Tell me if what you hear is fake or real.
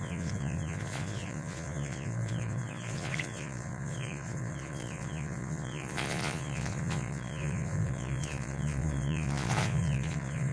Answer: fake